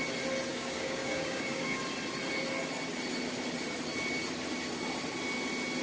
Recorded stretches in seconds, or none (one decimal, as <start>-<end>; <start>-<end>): 0.0-0.5; 1.8-5.8